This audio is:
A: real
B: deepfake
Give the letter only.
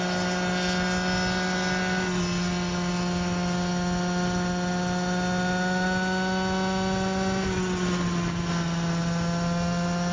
A